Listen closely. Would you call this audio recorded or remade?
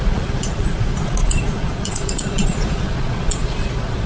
remade